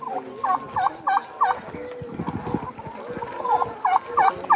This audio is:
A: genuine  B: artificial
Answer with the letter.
A